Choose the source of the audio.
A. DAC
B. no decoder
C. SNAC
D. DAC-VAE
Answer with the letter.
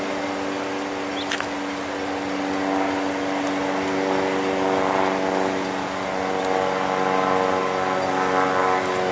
B